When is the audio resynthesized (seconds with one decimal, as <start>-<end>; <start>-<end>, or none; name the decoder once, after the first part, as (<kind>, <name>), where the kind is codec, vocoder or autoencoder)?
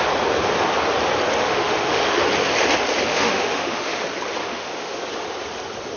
1.4-2.2 (autoencoder, DAC-VAE); 3.1-4.0; 4.4-5.0